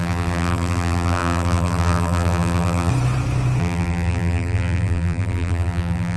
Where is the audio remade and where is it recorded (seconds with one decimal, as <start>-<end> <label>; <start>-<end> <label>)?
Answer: 0.0-2.9 remade; 2.9-3.6 recorded; 3.6-6.2 remade